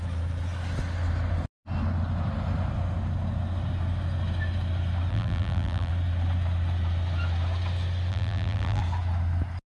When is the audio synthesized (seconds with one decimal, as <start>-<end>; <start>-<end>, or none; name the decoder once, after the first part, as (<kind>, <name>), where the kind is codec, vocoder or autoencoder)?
5.1-5.9 (vocoder, BigVGAN v2); 8.1-8.8

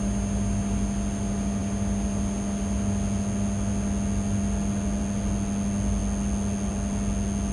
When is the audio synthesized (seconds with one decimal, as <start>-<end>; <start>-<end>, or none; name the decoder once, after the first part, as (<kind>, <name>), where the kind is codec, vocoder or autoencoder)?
none

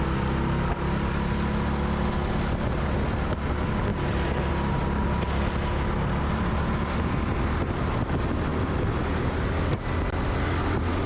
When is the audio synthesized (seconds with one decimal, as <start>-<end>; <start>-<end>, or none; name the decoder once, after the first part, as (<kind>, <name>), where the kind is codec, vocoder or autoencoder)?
none

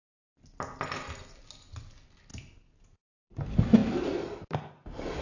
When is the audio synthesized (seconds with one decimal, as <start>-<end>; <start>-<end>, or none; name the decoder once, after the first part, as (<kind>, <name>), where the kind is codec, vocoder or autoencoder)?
none

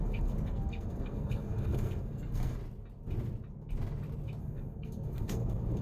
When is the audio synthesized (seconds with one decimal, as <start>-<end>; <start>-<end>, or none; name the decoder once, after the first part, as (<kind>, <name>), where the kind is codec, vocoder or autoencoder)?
0.0-2.6 (codec, SNAC); 4.4-5.8

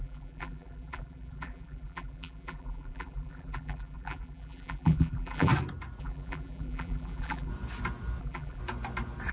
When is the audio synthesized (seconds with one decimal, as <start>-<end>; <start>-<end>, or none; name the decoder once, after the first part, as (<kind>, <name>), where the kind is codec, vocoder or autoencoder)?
0.0-5.5 (vocoder, BigVGAN v2); 6.0-7.5; 8.2-8.6

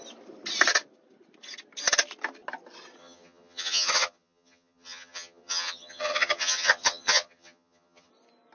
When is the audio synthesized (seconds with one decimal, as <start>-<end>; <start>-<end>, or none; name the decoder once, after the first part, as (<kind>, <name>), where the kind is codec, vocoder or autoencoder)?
3.0-8.1 (vocoder, HiFi-GAN)

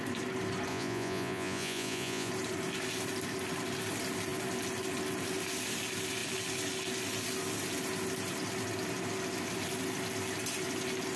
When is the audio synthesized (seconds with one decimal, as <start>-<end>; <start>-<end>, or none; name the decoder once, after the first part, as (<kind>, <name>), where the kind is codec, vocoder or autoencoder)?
0.7-2.3 (vocoder, Vocos)